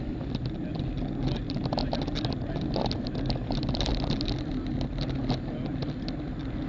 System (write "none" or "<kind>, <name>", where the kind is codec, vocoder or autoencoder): none